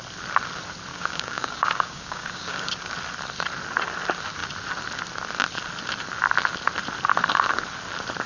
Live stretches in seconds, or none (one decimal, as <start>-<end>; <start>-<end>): 0.0-0.9; 2.7-8.3